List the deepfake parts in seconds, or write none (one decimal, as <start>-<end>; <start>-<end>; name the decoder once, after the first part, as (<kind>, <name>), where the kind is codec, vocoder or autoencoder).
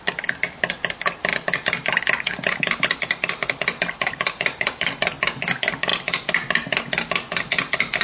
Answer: none